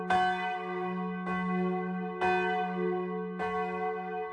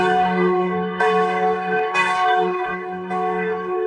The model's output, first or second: second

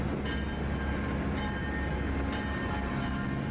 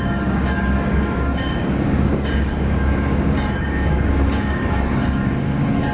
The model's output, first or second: second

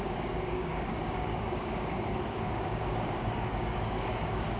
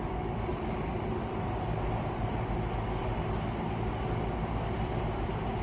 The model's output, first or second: first